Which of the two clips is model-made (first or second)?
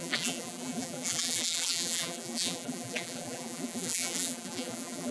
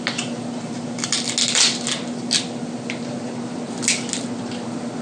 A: first